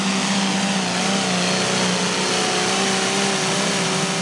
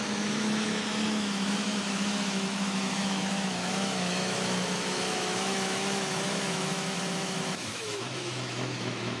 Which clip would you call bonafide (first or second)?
first